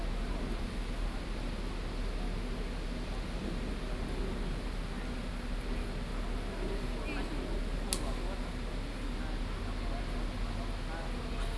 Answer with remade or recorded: recorded